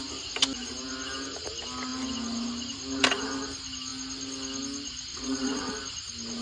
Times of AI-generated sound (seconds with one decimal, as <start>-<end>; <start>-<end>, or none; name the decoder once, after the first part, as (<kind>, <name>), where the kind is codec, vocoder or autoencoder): 5.1-5.7 (vocoder, WaveNeXt)